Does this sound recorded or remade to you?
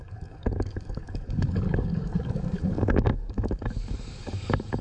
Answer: remade